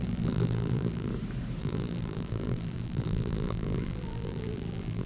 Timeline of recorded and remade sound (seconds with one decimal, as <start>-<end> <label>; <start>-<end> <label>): 0.0-1.1 remade; 1.1-1.6 recorded; 1.6-5.1 remade